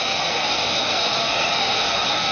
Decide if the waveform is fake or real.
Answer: fake